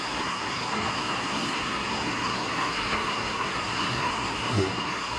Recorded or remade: remade